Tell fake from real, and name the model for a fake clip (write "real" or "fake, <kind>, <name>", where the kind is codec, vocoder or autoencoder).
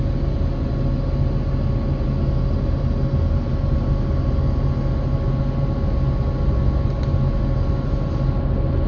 real